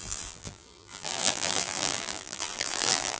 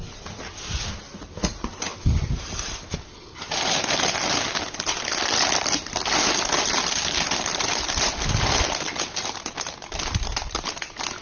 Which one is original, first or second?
second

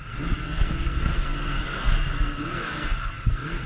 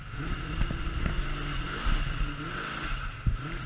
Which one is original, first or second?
second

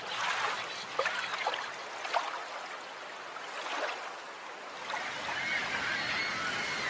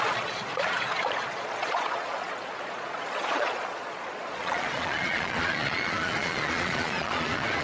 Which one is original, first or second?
first